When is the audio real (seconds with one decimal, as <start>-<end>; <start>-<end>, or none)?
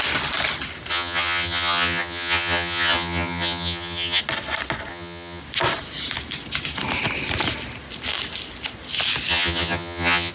0.0-0.9; 4.2-4.9; 5.4-9.3